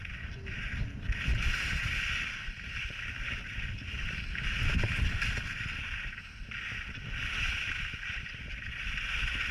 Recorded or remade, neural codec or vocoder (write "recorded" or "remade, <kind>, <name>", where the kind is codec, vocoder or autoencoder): recorded